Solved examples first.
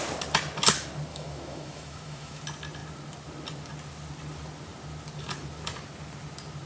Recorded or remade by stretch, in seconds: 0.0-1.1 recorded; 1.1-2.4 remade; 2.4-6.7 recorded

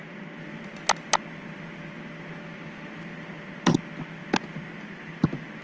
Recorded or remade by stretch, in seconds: 0.0-5.6 recorded

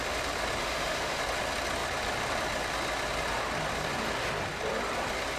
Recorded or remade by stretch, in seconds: 0.0-0.6 recorded; 0.6-1.2 remade; 1.2-5.4 recorded

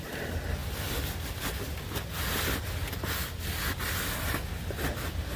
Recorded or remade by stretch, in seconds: 0.0-5.4 recorded

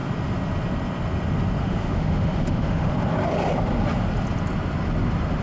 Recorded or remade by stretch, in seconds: 0.0-1.6 recorded; 1.6-2.9 remade; 2.9-5.4 recorded

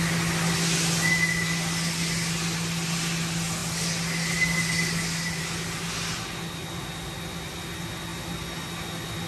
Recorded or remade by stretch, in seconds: 0.0-9.3 recorded

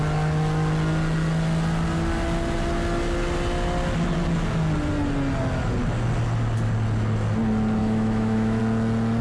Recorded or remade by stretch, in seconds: 0.0-7.8 recorded; 7.8-8.6 remade; 8.6-9.2 recorded